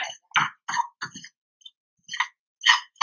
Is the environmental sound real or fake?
real